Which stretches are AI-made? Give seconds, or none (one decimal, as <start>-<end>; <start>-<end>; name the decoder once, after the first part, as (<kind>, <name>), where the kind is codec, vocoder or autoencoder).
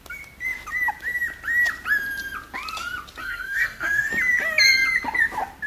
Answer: 3.2-4.1 (codec, SNAC)